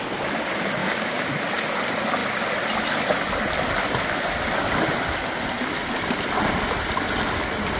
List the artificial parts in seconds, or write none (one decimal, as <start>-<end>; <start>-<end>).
0.8-1.3